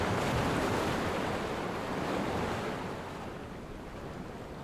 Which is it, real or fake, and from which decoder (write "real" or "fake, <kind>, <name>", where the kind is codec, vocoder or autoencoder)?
real